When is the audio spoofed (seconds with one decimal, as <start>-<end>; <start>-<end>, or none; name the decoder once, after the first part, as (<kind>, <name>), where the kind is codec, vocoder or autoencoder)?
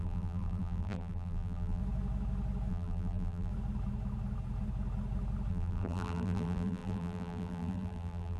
0.0-1.8 (vocoder, BigVGAN v2); 2.7-3.5; 5.5-8.4